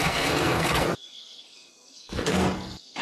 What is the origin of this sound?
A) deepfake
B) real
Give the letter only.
A